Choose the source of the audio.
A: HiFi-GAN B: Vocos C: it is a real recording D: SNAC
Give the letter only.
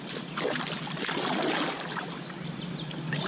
C